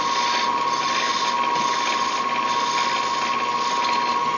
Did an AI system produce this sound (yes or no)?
no